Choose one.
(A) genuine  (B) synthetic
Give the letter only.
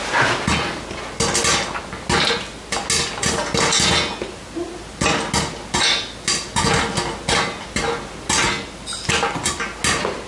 A